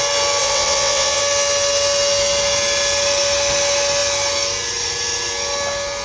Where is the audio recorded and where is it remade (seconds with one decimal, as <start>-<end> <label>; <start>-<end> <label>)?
0.0-0.4 recorded; 0.4-1.2 remade; 1.2-6.0 recorded